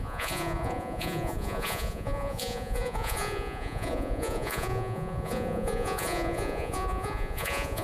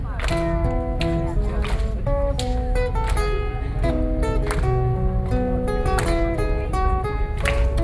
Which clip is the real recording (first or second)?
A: second